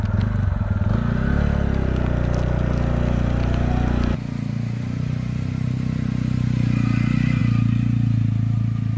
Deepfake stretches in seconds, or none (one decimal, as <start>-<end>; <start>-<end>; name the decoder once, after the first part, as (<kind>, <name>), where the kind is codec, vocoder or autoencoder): none